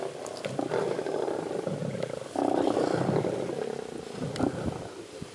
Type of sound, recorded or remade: recorded